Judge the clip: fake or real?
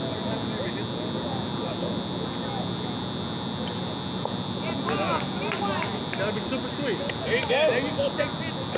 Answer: real